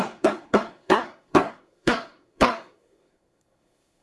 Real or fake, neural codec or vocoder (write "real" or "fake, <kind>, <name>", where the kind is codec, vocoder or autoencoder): fake, codec, SNAC